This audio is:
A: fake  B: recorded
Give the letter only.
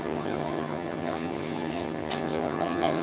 A